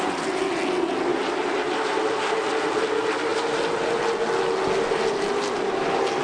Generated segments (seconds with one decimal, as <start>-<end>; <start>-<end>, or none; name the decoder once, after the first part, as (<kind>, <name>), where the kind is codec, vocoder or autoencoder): 1.1-2.2 (vocoder, BigVGAN v2)